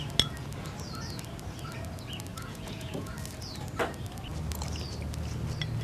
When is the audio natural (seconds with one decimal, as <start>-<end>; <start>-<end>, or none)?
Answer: 0.0-2.3; 3.1-5.8